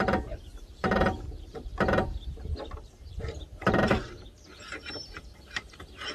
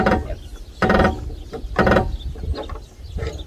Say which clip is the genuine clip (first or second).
second